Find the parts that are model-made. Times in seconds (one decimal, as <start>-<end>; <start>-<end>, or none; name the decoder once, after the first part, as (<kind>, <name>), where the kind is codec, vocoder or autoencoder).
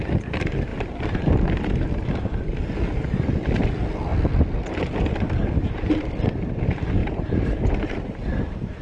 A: 0.7-1.3 (vocoder, BigVGAN v2); 7.0-8.8